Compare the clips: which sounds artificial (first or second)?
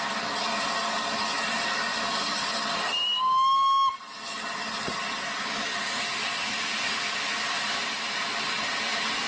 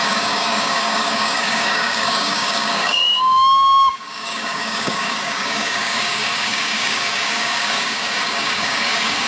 second